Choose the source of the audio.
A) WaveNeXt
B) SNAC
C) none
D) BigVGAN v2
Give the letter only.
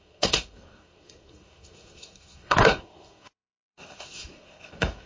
B